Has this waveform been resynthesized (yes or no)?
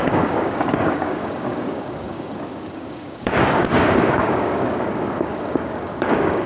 yes